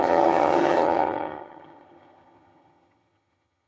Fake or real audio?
fake